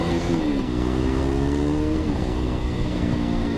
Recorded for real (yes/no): no